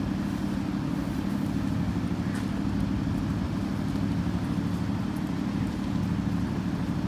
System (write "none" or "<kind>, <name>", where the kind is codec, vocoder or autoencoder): none